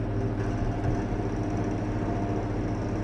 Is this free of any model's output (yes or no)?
yes